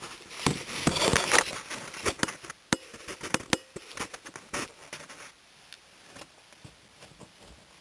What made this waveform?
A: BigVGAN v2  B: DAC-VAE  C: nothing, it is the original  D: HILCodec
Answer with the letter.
C